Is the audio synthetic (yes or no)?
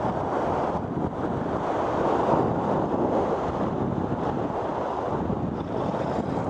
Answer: no